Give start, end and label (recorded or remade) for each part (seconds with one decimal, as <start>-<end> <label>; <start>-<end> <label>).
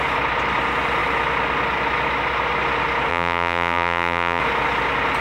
0.0-3.1 recorded; 3.1-4.4 remade; 4.4-5.2 recorded